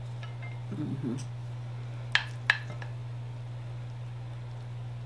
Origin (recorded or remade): recorded